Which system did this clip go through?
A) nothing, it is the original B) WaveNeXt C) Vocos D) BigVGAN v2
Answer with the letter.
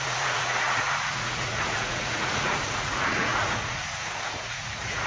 C